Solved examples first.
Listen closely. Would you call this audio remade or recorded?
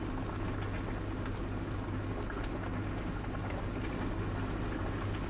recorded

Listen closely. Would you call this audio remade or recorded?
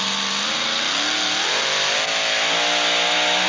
recorded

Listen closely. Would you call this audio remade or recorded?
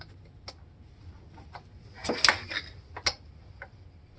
recorded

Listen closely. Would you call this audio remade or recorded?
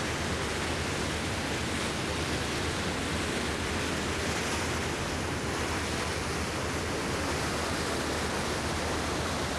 recorded